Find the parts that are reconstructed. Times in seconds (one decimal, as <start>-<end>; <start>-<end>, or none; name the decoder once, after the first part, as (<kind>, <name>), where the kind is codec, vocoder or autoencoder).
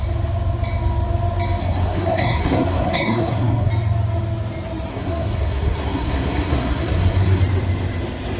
1.6-3.7 (codec, SNAC); 4.9-7.4